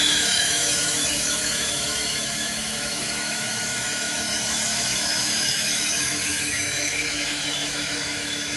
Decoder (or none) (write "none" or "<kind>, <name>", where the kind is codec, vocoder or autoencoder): autoencoder, DAC-VAE